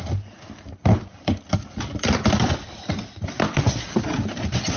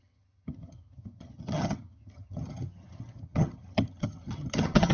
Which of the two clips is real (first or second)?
first